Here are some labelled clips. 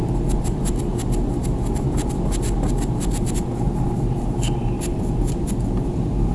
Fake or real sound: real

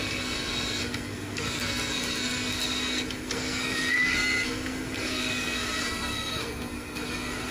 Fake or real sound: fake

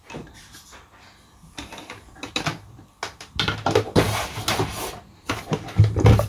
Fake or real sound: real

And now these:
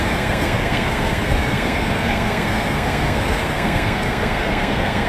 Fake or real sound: fake